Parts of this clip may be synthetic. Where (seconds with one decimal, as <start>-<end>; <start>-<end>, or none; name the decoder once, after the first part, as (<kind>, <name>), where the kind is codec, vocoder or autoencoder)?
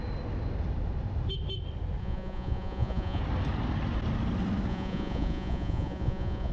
2.0-3.2 (vocoder, Vocos); 4.7-6.5